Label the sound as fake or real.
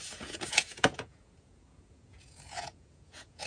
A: fake